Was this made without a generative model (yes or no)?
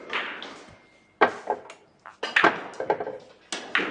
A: yes